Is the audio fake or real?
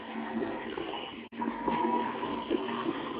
fake